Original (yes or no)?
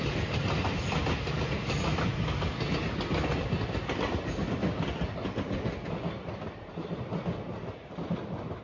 yes